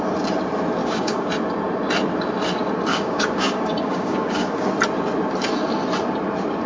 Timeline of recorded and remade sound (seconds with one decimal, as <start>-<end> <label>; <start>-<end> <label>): 0.0-0.8 recorded; 0.8-1.3 remade; 1.3-2.9 recorded; 2.9-4.7 remade; 4.7-6.7 recorded